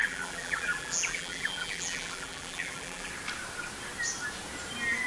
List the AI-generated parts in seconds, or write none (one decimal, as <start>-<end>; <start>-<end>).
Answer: 0.0-3.1